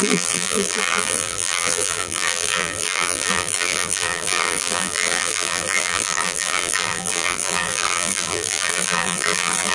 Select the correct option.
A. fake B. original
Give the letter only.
A